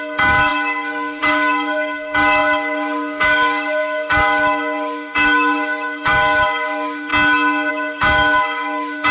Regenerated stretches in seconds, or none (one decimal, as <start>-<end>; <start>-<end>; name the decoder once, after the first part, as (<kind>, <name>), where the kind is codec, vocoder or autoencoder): 0.0-7.1 (codec, DAC); 7.7-9.1